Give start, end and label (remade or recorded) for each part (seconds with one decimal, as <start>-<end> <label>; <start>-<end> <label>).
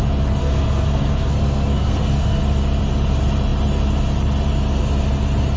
0.0-0.4 recorded; 0.4-2.4 remade; 2.4-5.6 recorded